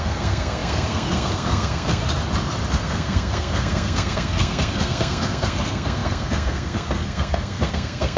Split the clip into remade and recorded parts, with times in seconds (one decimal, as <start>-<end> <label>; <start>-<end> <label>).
0.0-2.0 remade; 2.0-2.7 recorded; 2.7-8.2 remade